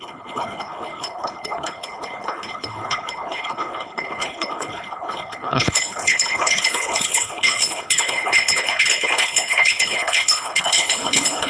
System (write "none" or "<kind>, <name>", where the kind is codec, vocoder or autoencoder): codec, HILCodec